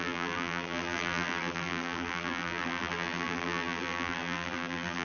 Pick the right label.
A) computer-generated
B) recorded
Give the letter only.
A